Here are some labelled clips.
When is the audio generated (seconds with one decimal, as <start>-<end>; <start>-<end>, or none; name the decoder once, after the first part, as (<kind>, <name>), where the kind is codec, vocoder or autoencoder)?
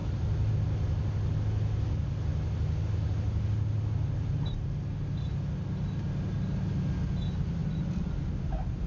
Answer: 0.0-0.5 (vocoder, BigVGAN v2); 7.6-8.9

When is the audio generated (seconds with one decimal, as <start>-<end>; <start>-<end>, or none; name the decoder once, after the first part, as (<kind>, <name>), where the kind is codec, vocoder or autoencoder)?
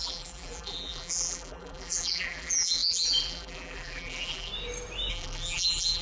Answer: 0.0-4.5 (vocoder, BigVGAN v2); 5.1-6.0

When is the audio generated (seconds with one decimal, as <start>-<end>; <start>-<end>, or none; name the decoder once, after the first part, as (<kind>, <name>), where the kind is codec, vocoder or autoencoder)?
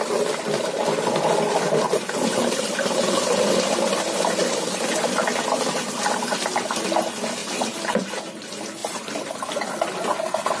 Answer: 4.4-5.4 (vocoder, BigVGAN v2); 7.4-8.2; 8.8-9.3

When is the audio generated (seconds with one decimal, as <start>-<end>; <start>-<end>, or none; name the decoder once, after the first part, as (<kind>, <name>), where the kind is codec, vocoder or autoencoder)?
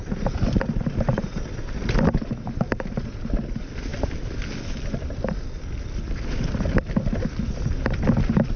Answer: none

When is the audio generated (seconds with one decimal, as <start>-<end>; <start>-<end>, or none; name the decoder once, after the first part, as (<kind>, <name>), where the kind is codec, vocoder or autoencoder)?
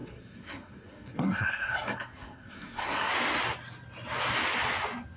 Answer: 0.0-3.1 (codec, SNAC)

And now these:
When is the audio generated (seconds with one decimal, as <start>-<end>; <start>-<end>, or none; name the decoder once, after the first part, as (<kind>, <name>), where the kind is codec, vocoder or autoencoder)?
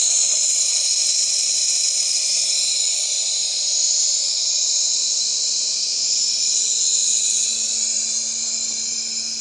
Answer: 7.0-7.7 (vocoder, WaveNeXt)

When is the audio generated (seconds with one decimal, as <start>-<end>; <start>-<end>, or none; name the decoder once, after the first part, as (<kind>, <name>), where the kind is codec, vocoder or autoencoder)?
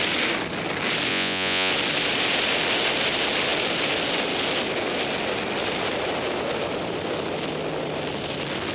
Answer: 1.1-1.7 (vocoder, Vocos)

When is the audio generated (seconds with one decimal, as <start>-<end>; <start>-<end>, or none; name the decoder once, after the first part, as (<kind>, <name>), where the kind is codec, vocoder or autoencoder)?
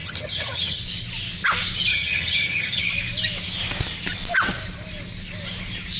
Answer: 0.0-0.8 (vocoder, HiFi-GAN); 1.9-2.8